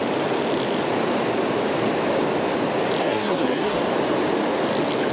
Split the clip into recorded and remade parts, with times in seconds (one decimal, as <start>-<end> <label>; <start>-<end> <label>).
0.0-3.0 recorded; 3.0-3.8 remade; 3.8-5.1 recorded